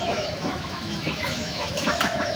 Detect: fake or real fake